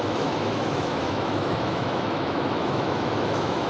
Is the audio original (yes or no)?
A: no